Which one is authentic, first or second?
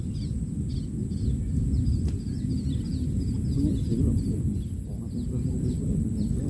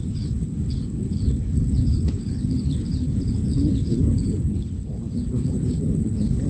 first